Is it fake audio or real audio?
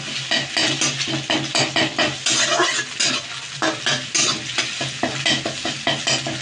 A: real